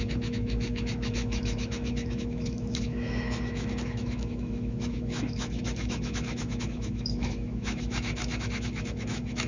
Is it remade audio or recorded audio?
remade